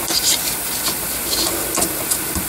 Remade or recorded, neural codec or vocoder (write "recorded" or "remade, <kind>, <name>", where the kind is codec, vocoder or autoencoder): recorded